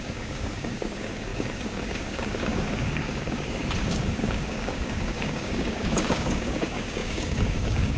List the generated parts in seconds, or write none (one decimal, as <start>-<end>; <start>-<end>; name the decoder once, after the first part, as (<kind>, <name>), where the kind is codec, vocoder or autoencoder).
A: 0.0-8.0 (codec, DAC)